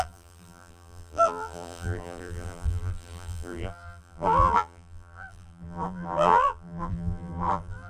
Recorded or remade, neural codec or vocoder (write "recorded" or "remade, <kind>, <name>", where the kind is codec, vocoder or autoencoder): remade, vocoder, BigVGAN v2